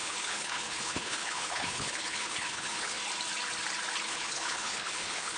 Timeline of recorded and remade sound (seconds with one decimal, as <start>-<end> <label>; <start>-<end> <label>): 0.0-3.0 remade; 3.0-4.1 recorded; 4.1-5.4 remade

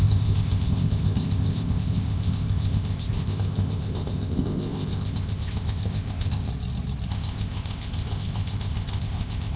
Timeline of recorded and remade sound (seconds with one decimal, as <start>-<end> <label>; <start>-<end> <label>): 0.0-6.5 remade; 6.5-7.1 recorded; 7.1-9.6 remade